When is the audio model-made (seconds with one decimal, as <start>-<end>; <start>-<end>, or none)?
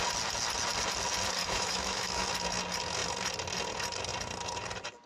1.4-2.3